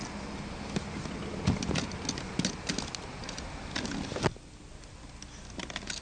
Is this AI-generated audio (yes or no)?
no